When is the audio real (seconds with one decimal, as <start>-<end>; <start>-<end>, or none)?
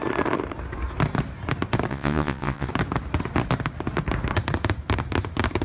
0.0-1.9; 2.7-5.6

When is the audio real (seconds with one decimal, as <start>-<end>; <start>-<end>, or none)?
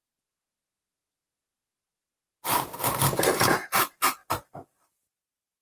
0.0-3.4; 4.2-5.6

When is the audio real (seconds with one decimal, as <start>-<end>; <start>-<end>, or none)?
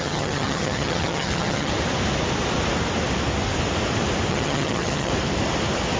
1.7-4.3; 5.1-6.0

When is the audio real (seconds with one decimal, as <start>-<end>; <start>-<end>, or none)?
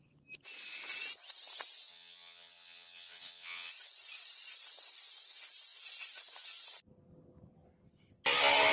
0.0-1.9; 3.7-8.7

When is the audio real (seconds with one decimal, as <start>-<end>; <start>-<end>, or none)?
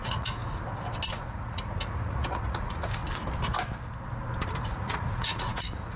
0.4-1.1; 3.0-4.6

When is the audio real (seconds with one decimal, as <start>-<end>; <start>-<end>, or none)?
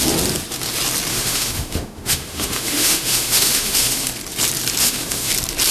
0.0-1.1; 4.1-4.8; 5.3-5.7